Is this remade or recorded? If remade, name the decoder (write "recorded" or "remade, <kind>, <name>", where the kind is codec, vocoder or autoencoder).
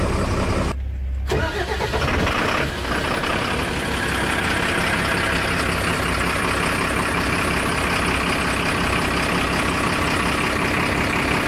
recorded